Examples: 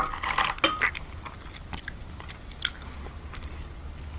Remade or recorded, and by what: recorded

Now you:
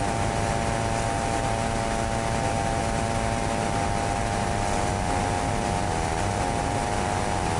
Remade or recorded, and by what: recorded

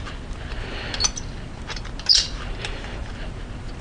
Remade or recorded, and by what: recorded